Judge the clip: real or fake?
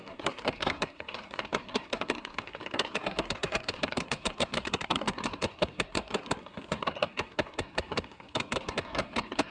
fake